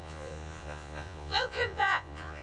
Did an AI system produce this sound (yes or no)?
yes